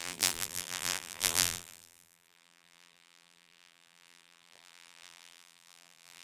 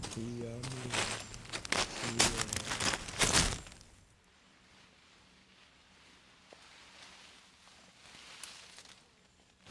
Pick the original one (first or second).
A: second